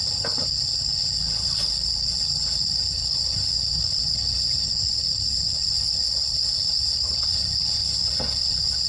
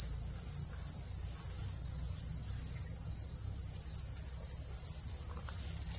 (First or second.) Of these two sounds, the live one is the second